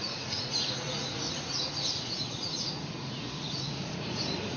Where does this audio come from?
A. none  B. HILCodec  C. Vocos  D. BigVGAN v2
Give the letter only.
C